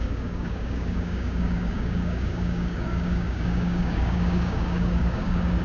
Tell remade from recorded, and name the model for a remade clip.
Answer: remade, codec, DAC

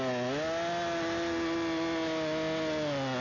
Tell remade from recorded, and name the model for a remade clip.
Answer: recorded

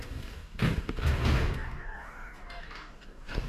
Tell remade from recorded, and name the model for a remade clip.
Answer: remade, codec, DAC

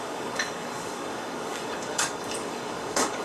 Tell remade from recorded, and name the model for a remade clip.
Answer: remade, codec, DAC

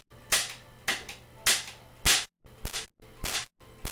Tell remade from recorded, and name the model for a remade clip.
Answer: recorded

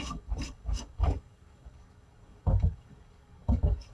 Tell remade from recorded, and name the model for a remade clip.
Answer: remade, codec, DAC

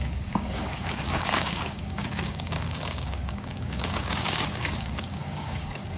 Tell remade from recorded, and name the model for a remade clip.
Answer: remade, codec, DAC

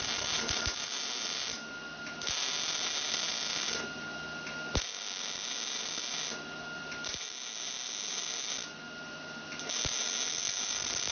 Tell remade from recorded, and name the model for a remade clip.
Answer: recorded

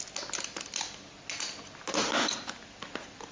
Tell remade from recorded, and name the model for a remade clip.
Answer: recorded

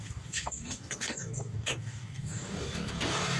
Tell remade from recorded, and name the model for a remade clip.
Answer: remade, codec, DAC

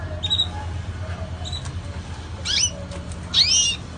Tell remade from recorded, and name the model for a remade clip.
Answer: recorded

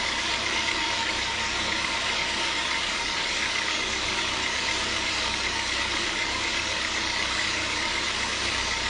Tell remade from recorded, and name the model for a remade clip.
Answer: remade, codec, DAC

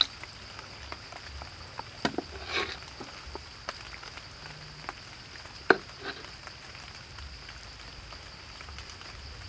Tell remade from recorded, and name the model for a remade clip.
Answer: recorded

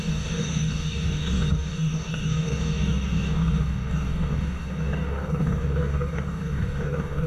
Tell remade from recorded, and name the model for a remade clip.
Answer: remade, codec, DAC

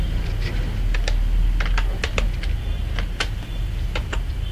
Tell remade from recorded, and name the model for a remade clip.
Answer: recorded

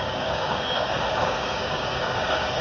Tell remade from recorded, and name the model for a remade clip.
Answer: remade, codec, DAC